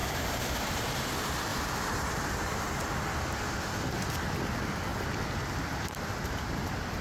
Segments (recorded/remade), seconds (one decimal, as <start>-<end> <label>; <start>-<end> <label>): 0.0-1.1 remade; 1.1-1.5 recorded; 1.5-2.8 remade; 2.8-7.0 recorded